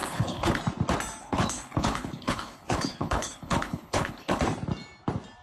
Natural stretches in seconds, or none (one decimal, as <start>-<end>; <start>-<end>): 0.6-1.2; 4.4-5.4